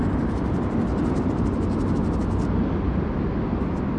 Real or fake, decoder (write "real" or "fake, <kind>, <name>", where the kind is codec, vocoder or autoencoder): real